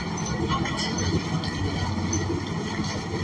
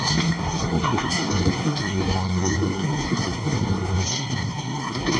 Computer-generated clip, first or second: second